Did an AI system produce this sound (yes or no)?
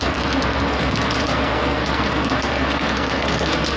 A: yes